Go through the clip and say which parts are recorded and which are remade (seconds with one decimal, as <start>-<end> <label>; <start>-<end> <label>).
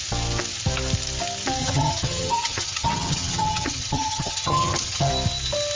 0.0-1.6 recorded; 1.6-5.1 remade; 5.1-5.8 recorded